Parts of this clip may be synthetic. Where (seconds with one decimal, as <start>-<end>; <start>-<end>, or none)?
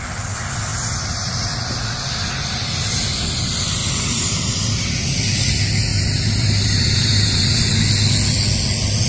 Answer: 0.7-1.3; 3.8-4.8; 5.9-7.7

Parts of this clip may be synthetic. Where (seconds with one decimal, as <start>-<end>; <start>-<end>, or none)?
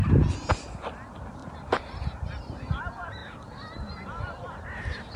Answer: 1.4-2.8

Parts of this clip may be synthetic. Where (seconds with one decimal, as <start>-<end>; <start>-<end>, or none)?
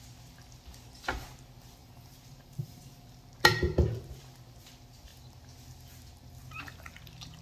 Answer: 1.8-2.8